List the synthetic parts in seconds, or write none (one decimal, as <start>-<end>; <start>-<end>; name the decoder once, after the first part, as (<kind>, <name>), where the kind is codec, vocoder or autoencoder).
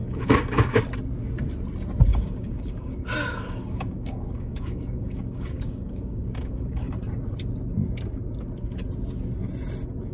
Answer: 0.0-0.8 (codec, DAC); 2.1-6.9